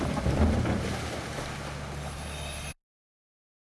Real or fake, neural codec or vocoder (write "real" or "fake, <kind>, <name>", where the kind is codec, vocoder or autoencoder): real